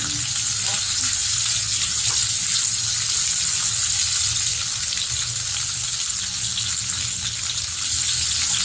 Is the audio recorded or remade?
recorded